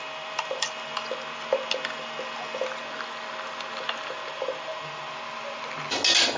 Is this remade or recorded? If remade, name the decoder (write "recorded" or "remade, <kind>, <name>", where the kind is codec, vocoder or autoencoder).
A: recorded